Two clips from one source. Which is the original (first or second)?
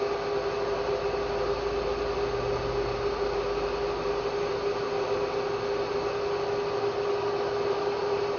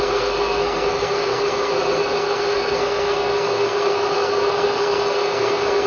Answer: first